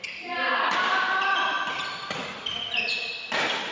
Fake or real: real